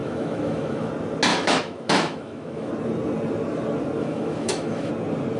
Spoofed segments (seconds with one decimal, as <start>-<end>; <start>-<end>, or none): 0.0-0.9; 1.3-2.7; 4.0-4.9